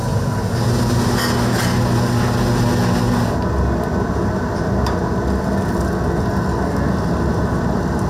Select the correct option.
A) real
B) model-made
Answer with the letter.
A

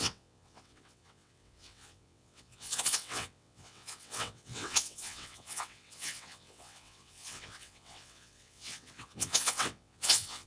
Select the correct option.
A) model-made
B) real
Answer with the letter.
A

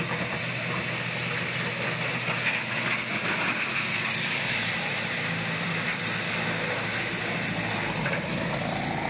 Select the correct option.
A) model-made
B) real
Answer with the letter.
B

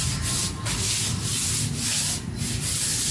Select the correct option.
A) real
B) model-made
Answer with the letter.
A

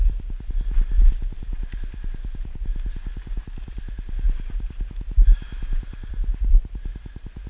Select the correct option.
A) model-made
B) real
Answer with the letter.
B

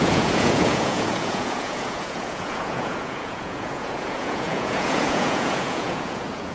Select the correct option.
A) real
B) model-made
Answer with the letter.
B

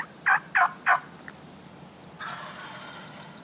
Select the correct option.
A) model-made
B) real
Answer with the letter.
B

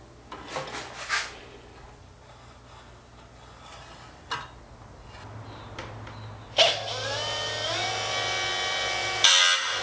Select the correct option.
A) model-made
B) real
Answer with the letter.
B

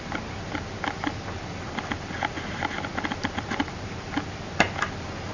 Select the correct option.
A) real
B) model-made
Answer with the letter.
A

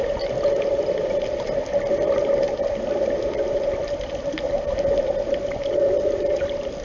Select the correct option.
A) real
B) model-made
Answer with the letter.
A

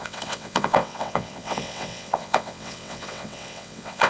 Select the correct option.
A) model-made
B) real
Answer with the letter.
A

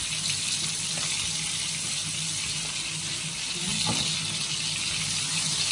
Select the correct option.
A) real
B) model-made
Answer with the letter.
A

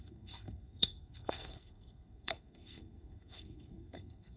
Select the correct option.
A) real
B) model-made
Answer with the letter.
B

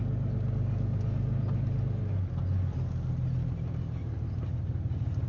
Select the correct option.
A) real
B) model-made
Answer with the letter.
A